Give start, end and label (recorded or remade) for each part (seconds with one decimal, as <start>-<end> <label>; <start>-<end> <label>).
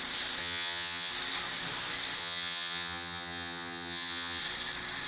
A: 0.0-0.4 recorded; 0.4-1.1 remade; 1.1-2.2 recorded; 2.2-4.4 remade; 4.4-5.1 recorded